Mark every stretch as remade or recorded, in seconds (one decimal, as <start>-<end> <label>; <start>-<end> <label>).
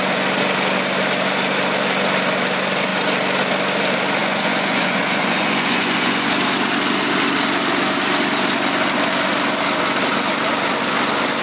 0.0-4.2 recorded; 4.2-6.3 remade; 6.3-11.4 recorded